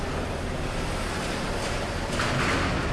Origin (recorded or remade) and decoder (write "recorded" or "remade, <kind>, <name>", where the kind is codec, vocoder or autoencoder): recorded